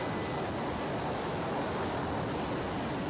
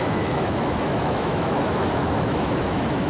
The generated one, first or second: second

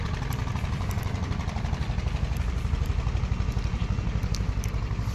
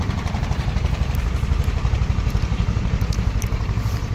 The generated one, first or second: second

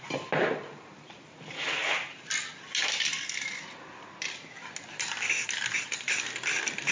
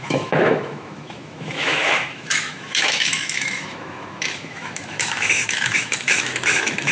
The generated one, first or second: second